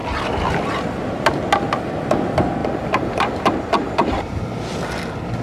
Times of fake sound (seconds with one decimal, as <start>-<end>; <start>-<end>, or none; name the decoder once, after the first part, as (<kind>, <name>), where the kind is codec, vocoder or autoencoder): 2.6-4.4 (vocoder, BigVGAN v2)